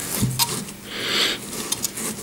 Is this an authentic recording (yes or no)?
yes